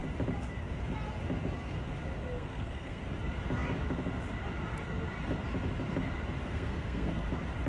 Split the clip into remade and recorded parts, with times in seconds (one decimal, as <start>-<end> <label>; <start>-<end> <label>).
0.0-2.4 recorded; 2.4-3.0 remade; 3.0-6.4 recorded; 6.4-7.3 remade; 7.3-7.7 recorded